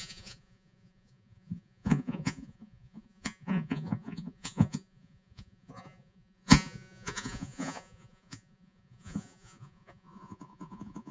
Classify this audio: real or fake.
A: fake